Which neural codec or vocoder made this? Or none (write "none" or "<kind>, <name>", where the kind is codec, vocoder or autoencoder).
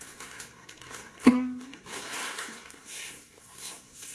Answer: codec, SNAC